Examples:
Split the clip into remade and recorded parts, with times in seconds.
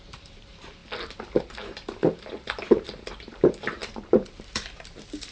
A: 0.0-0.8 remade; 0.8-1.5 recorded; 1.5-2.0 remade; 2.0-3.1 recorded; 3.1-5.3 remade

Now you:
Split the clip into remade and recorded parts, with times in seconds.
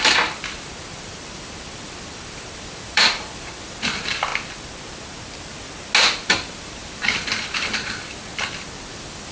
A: 0.0-4.3 remade; 4.3-6.3 recorded; 6.3-9.3 remade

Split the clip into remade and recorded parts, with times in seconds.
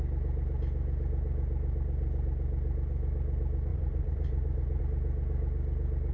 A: 0.0-3.7 recorded; 3.7-4.8 remade; 4.8-6.1 recorded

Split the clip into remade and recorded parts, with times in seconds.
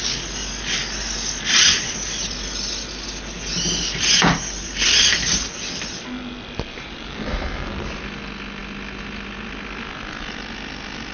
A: 0.0-6.7 recorded; 6.7-7.9 remade; 7.9-11.1 recorded